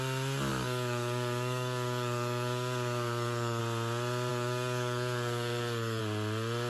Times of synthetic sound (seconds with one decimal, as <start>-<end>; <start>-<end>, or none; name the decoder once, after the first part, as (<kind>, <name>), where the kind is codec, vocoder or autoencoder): 0.5-3.6 (codec, DAC); 4.3-6.0